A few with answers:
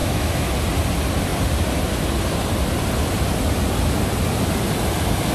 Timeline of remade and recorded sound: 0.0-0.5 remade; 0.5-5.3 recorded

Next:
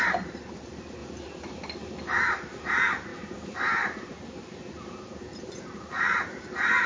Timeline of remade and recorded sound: 0.0-1.0 remade; 1.0-2.2 recorded; 2.2-6.9 remade

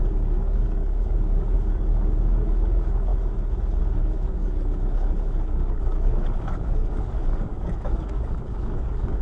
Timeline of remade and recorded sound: 0.0-3.1 remade; 3.1-4.0 recorded; 4.0-9.2 remade

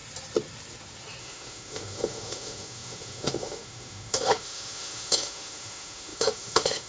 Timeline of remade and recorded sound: 0.0-1.2 recorded; 1.2-6.9 remade

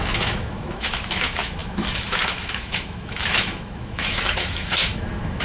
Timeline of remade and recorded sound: 0.0-5.4 remade

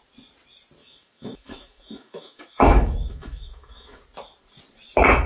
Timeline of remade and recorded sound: 0.0-0.8 recorded; 0.8-4.0 remade; 4.0-5.3 recorded